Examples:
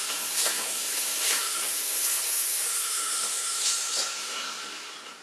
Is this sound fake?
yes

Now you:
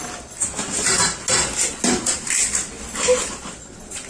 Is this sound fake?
no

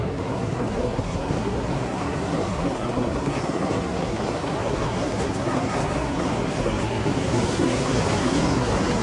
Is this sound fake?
yes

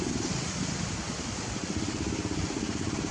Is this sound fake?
no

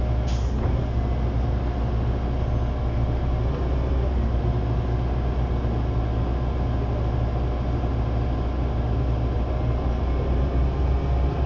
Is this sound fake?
no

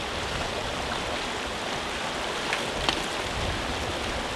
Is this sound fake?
no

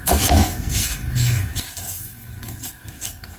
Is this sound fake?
yes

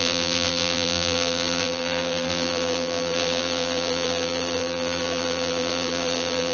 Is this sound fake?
yes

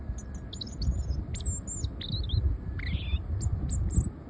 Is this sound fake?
no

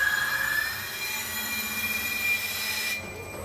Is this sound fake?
no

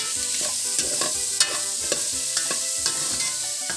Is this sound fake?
yes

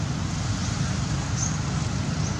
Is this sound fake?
no